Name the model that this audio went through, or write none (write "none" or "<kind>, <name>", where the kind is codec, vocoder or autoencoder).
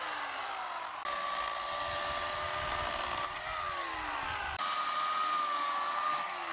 none